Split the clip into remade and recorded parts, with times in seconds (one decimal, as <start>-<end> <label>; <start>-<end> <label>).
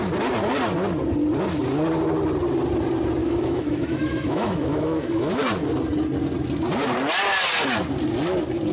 0.0-3.2 recorded; 3.2-5.4 remade; 5.4-8.7 recorded